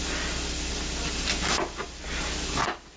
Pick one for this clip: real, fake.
real